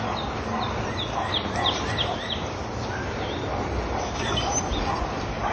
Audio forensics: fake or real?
real